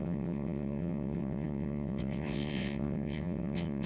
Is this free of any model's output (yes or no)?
no